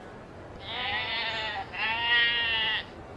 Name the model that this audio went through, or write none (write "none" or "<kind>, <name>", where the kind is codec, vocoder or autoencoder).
none